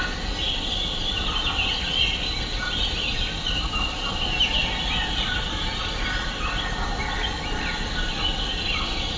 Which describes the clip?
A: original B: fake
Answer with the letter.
A